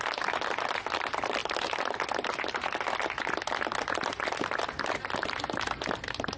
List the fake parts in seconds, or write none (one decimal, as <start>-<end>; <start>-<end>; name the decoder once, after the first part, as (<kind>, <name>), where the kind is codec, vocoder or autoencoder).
none